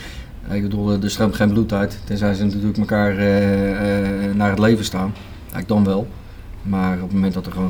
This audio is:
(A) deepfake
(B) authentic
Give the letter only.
B